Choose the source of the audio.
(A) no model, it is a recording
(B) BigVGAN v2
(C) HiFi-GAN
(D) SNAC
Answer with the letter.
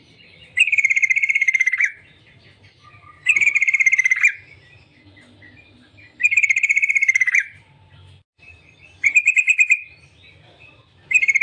B